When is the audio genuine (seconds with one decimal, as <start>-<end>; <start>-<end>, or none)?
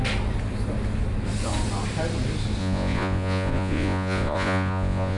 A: 0.0-2.6